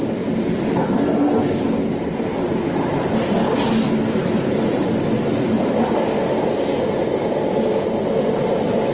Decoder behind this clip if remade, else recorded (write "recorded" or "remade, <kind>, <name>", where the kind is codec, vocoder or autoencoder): recorded